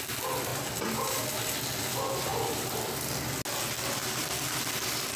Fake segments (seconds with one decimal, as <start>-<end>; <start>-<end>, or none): 4.0-5.2